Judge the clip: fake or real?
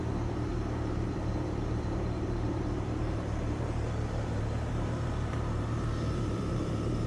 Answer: fake